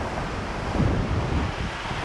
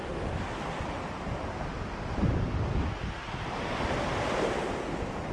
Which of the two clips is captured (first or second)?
second